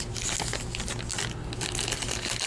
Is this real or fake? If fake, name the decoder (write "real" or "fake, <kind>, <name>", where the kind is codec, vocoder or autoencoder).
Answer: real